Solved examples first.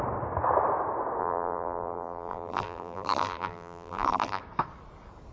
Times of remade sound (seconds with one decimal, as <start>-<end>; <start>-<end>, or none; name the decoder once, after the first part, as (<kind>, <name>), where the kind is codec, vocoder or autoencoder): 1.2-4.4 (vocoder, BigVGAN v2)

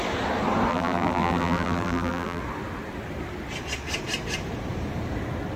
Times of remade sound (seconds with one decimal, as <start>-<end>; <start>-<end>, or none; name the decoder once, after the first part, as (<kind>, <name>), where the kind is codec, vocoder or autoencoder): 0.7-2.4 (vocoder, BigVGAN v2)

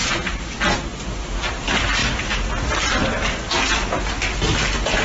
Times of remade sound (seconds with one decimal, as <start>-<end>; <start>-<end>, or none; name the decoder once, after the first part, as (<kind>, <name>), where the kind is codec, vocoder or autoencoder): none

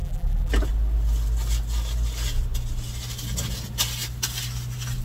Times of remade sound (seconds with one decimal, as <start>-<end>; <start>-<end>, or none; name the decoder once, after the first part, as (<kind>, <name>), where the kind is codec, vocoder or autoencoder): 0.0-0.5 (vocoder, BigVGAN v2)

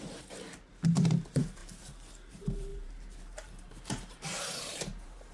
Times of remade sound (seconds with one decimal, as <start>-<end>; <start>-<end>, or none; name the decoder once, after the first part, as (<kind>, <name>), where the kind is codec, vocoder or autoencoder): 0.0-5.3 (vocoder, BigVGAN v2)

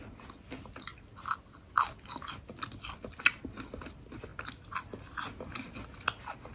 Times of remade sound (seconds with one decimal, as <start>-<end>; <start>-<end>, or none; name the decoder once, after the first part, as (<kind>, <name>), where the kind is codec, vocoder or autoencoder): none